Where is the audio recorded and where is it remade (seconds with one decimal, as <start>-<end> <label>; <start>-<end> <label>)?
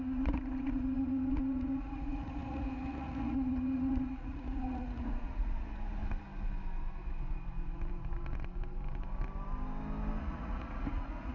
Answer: 0.0-6.0 remade; 6.0-10.2 recorded; 10.2-11.3 remade